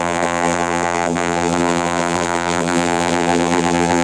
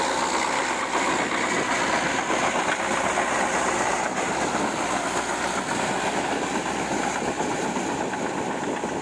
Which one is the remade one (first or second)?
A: first